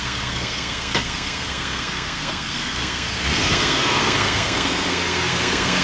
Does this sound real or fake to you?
fake